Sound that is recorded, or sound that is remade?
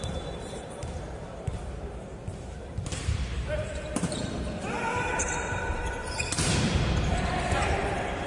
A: remade